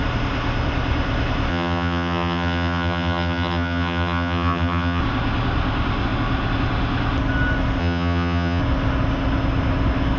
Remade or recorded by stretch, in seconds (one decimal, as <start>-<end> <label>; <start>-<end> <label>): 0.0-1.5 recorded; 1.5-5.0 remade; 5.0-7.8 recorded; 7.8-8.6 remade; 8.6-10.2 recorded